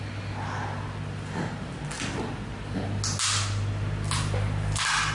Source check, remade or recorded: recorded